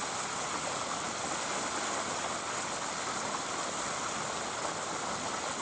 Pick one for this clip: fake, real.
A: real